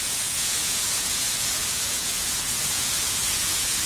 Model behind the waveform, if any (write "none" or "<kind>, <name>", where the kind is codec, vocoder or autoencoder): vocoder, Vocos